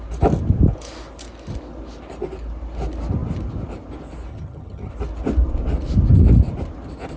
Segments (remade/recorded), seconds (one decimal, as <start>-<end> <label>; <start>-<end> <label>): 0.0-4.3 recorded; 4.3-4.9 remade; 4.9-7.2 recorded